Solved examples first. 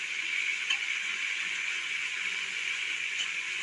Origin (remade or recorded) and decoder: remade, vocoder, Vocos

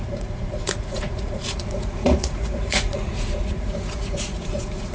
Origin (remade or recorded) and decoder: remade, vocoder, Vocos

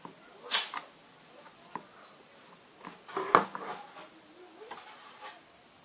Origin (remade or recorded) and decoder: recorded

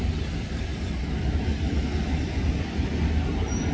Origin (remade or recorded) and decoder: recorded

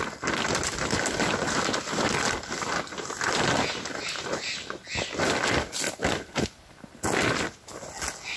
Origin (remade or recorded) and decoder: recorded